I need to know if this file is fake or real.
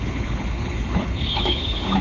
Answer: fake